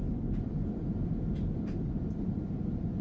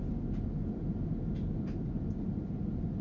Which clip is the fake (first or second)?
first